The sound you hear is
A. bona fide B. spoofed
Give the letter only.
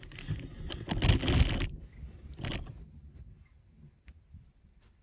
A